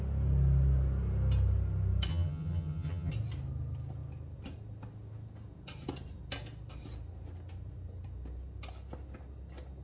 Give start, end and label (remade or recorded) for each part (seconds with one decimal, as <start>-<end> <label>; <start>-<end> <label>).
0.0-2.1 recorded; 2.1-3.1 remade; 3.1-9.8 recorded